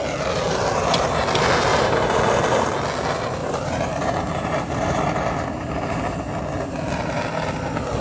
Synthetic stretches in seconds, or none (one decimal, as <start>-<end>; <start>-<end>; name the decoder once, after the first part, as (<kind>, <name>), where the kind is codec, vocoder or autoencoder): 1.7-2.2 (vocoder, BigVGAN v2); 3.4-6.2